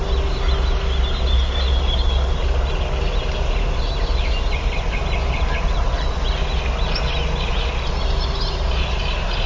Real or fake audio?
real